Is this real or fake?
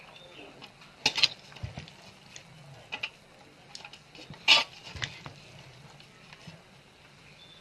real